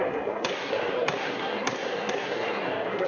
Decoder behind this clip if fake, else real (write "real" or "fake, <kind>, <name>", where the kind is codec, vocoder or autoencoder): fake, codec, SNAC